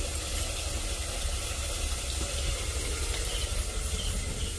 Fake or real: real